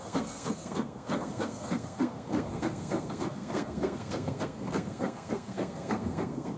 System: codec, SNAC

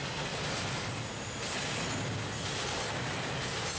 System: none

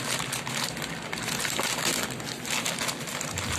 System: none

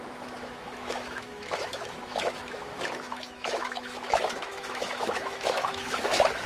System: autoencoder, DAC-VAE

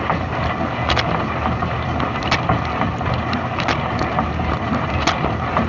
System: none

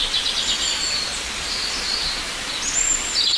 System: none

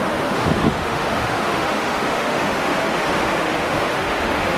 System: autoencoder, DAC-VAE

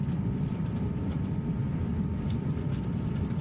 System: vocoder, BigVGAN v2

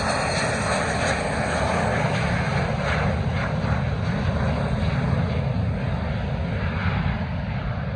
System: none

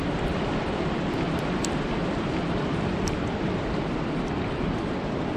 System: vocoder, BigVGAN v2